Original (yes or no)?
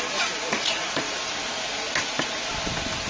yes